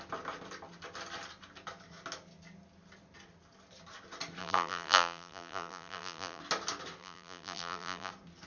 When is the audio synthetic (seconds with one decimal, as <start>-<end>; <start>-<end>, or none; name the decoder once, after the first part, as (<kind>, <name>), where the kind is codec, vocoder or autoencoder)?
4.4-6.4 (vocoder, BigVGAN v2); 7.0-8.1